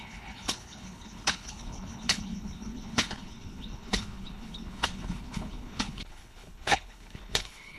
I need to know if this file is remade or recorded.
remade